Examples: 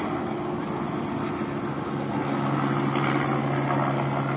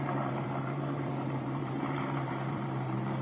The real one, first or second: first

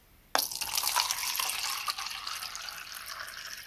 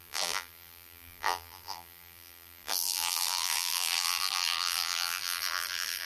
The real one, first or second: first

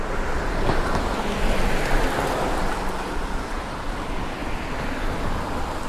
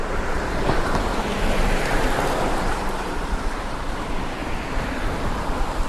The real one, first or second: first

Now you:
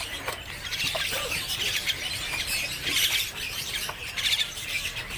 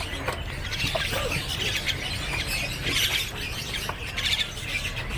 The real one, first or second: second